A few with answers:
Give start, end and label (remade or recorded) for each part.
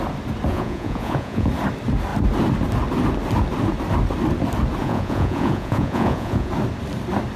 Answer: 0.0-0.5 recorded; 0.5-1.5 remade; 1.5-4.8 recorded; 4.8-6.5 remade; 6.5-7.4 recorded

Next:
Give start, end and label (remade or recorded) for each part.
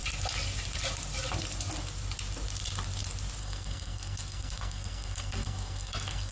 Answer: 0.0-3.4 recorded; 3.4-6.3 remade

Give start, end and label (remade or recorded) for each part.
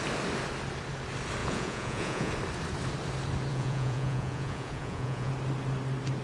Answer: 0.0-1.4 recorded; 1.4-2.3 remade; 2.3-3.5 recorded; 3.5-5.3 remade; 5.3-6.2 recorded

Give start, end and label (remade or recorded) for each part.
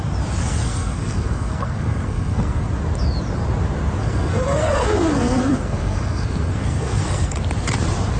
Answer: 0.0-0.4 recorded; 0.4-2.7 remade; 2.7-4.0 recorded; 4.0-7.4 remade; 7.4-8.2 recorded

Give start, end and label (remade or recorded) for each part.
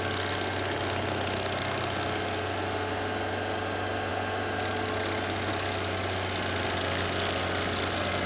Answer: 0.0-8.3 recorded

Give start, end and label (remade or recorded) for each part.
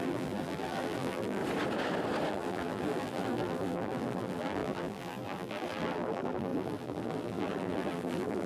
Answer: 0.0-1.4 remade; 1.4-2.3 recorded; 2.3-8.5 remade